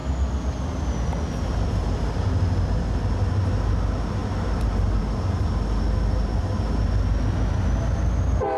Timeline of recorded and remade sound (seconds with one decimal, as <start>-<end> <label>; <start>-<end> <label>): 0.0-8.6 recorded